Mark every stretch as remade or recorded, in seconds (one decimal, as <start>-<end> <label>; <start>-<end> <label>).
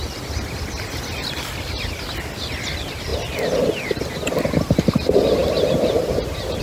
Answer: 0.0-3.1 recorded; 3.1-4.1 remade; 4.1-5.4 recorded; 5.4-6.6 remade